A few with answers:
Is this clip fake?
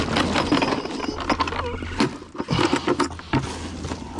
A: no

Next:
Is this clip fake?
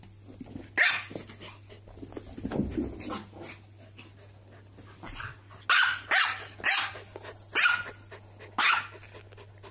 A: no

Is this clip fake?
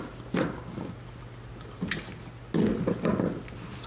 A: no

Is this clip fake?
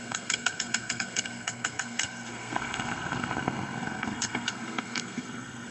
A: yes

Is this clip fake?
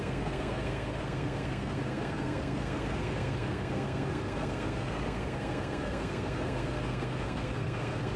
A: yes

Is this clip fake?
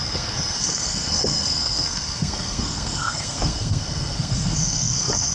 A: yes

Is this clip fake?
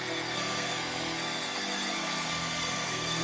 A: yes